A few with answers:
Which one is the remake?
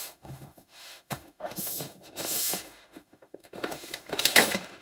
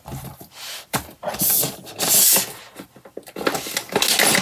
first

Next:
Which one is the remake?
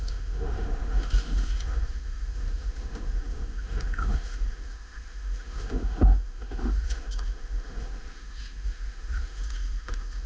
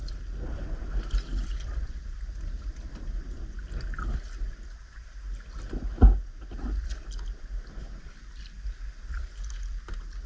first